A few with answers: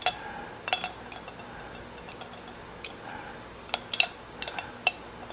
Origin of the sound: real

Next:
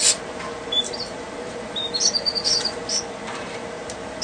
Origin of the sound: fake